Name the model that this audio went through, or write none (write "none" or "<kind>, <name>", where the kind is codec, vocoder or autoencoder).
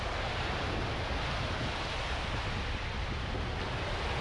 none